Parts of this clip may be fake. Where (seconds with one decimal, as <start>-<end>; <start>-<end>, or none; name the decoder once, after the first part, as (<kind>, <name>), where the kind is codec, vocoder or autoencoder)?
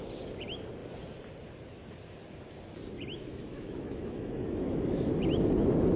3.3-5.1 (autoencoder, DAC-VAE)